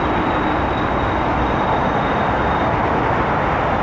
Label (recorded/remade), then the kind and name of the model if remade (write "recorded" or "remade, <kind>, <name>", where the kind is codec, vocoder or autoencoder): recorded